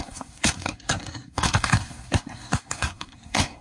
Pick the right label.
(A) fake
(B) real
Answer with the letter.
A